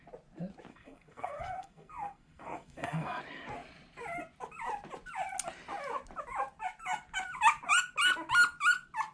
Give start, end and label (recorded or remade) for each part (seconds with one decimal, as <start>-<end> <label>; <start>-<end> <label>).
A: 0.0-0.7 recorded; 0.7-3.2 remade; 3.2-9.1 recorded